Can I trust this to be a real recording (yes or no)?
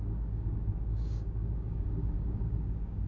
no